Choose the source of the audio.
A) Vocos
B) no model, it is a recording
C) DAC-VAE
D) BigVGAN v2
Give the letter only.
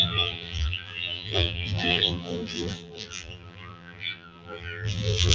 D